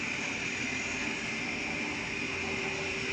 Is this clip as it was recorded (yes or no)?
yes